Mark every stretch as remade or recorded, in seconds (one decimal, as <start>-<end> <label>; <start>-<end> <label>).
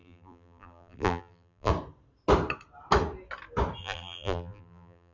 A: 0.0-1.7 remade; 1.7-3.8 recorded; 3.8-5.1 remade